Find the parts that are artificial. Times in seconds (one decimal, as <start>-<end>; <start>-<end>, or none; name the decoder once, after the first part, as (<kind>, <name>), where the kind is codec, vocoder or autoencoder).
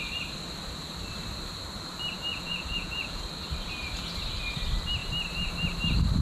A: 2.3-3.2 (vocoder, Vocos)